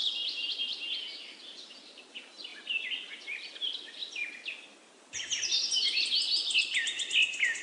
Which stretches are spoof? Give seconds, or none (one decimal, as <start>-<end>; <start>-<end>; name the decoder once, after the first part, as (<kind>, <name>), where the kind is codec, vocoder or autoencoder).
none